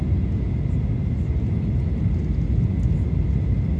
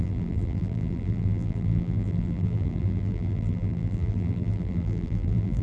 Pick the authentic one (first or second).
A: first